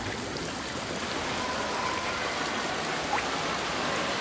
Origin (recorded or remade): recorded